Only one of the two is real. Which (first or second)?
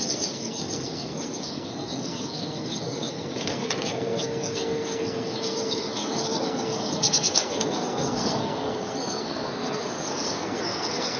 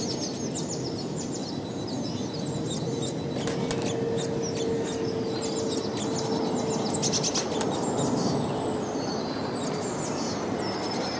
second